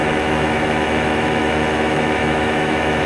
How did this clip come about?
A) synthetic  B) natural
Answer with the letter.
A